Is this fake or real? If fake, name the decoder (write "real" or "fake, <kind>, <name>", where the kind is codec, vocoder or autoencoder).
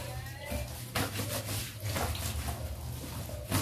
real